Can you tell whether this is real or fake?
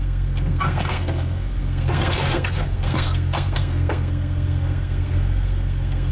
fake